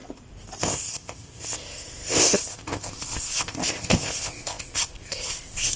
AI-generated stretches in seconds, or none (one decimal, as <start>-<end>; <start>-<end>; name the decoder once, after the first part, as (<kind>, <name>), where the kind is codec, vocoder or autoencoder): 0.6-5.8 (codec, ZipCodec)